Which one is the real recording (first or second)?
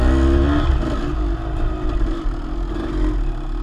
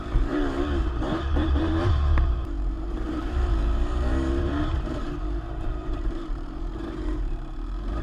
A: first